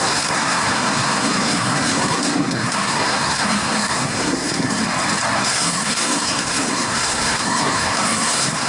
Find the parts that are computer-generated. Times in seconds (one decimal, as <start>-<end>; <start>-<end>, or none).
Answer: 0.0-4.8; 5.4-8.7